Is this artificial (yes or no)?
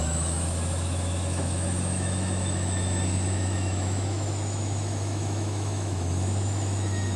yes